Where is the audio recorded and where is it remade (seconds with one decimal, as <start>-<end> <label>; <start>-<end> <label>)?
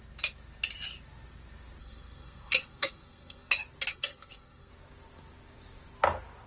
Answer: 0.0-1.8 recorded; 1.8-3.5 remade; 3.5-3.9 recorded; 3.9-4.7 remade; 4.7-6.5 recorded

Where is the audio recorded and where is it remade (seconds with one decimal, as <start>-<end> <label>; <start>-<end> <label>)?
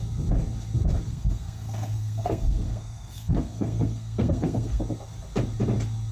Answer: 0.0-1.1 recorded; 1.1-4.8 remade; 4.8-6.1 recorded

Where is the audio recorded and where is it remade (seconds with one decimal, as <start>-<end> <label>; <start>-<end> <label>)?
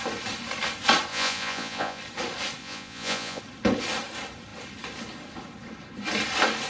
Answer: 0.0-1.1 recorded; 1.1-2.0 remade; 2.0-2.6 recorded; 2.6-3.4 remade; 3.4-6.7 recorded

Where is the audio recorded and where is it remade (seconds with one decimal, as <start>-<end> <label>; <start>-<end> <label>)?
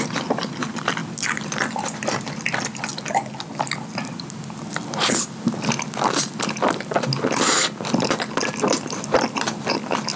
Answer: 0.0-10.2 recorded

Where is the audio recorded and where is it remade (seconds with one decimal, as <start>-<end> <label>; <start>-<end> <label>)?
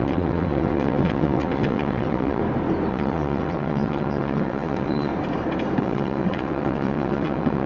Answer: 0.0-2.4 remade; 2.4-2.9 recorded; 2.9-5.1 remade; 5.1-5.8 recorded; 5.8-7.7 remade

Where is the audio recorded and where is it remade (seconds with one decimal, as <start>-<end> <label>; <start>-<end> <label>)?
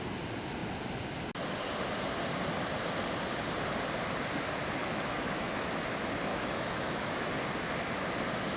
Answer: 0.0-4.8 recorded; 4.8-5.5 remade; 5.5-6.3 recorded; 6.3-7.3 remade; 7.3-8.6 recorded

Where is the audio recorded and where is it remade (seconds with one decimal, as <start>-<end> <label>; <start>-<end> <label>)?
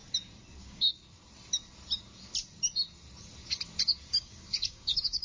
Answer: 0.0-0.6 recorded; 0.6-1.0 remade; 1.0-4.1 recorded; 4.1-5.2 remade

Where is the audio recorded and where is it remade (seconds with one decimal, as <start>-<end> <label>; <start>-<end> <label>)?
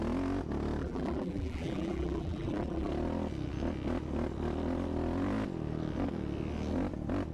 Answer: 0.0-0.8 recorded; 0.8-2.9 remade; 2.9-7.3 recorded